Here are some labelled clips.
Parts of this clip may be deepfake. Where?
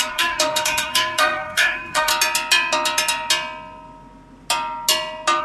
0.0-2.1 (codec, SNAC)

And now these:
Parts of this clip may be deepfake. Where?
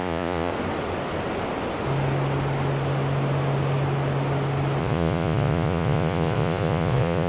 0.0-0.5 (vocoder, Vocos); 4.8-7.3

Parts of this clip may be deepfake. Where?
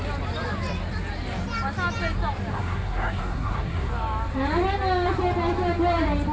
2.5-3.9 (codec, SNAC)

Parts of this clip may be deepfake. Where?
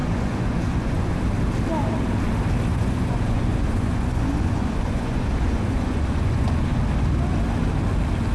0.0-1.2 (vocoder, Vocos); 2.7-6.8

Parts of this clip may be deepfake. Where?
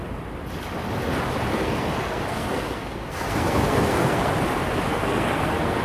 1.5-4.3 (codec, SNAC); 4.9-5.8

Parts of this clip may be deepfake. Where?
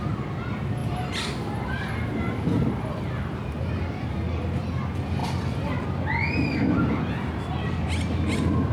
5.2-5.8 (vocoder, BigVGAN v2)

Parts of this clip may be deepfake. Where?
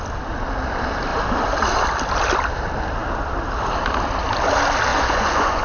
4.9-5.6 (vocoder, Vocos)